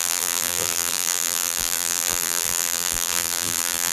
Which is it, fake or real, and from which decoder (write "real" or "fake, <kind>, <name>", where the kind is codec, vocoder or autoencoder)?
fake, vocoder, BigVGAN v2